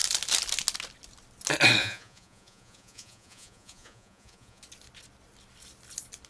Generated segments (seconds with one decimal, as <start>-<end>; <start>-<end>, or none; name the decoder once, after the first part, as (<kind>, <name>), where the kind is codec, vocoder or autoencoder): 1.8-4.6 (vocoder, Vocos)